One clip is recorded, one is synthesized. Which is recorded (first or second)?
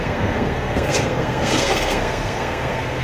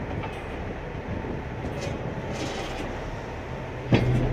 second